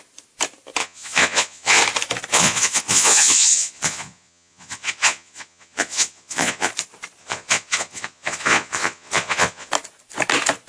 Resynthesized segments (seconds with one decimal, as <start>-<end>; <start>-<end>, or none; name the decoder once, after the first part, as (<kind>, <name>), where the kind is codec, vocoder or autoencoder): 0.8-1.8 (vocoder, Vocos); 2.3-6.7; 7.2-9.7